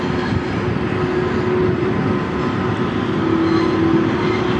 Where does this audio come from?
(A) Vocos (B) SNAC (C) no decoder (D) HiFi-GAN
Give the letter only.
C